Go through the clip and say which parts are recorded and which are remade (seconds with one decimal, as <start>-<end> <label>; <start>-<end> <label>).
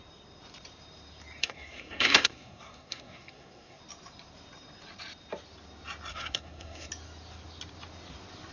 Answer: 0.0-1.4 recorded; 1.4-3.8 remade; 3.8-6.1 recorded; 6.1-6.9 remade; 6.9-8.5 recorded